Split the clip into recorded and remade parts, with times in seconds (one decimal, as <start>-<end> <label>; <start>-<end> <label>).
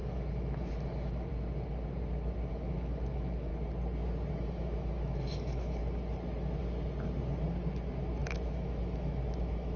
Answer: 0.0-1.3 remade; 1.3-2.5 recorded; 2.5-3.5 remade; 3.5-4.3 recorded; 4.3-5.8 remade; 5.8-8.2 recorded; 8.2-9.8 remade